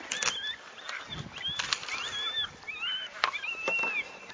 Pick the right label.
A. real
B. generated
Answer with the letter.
A